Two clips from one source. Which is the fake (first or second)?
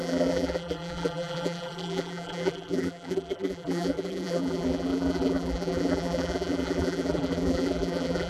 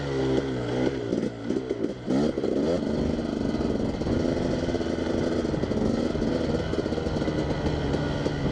first